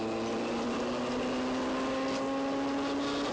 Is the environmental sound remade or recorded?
recorded